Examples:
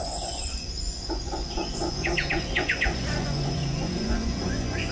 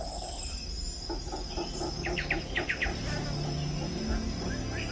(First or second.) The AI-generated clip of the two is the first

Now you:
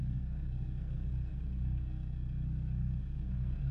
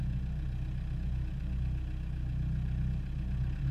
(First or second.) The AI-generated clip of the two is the first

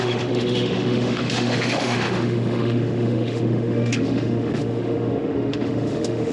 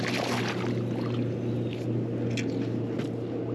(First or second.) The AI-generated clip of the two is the first